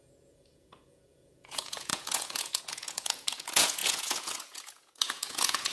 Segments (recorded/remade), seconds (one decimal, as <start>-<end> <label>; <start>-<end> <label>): 0.0-5.7 remade